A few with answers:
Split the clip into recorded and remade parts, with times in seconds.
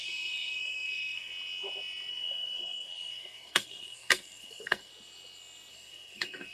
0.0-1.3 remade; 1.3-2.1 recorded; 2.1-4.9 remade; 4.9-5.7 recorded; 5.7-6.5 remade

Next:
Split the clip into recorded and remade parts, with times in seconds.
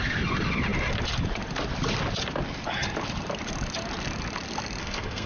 0.0-4.8 recorded; 4.8-5.3 remade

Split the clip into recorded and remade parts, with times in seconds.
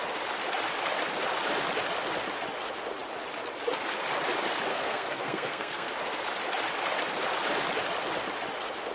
0.0-4.7 recorded; 4.7-5.9 remade; 5.9-8.9 recorded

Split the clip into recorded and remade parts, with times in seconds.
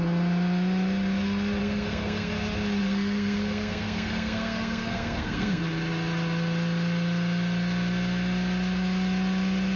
0.0-1.6 recorded; 1.6-2.3 remade; 2.3-2.8 recorded; 2.8-5.6 remade; 5.6-9.8 recorded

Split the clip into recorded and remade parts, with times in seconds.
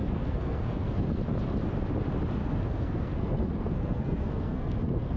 0.0-1.2 remade; 1.2-2.4 recorded; 2.4-5.2 remade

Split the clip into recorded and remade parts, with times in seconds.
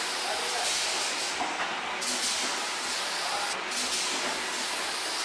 0.0-5.2 recorded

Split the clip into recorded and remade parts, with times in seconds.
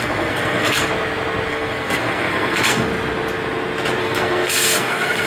0.0-0.9 remade; 0.9-1.5 recorded; 1.5-2.9 remade; 2.9-4.0 recorded; 4.0-5.3 remade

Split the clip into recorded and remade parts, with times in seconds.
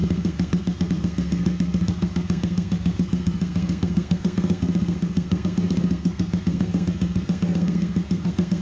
0.0-8.6 remade